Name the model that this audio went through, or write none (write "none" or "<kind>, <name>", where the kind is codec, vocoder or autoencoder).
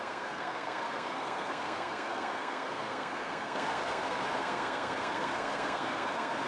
codec, SNAC